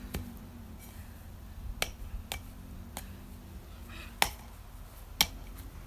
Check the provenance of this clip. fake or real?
real